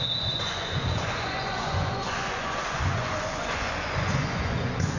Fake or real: fake